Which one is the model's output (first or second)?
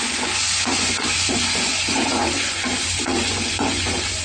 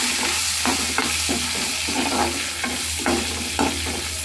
first